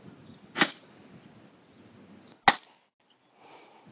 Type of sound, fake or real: real